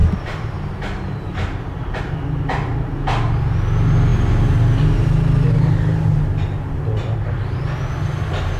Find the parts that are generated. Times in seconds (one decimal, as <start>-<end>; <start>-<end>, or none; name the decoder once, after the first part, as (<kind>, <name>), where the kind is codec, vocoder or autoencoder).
none